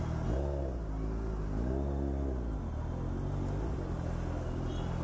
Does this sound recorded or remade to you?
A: recorded